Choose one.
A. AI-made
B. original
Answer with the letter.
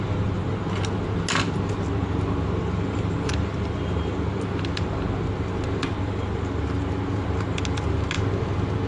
B